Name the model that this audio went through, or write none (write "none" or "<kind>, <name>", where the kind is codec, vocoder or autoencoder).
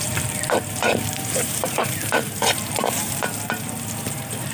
vocoder, BigVGAN v2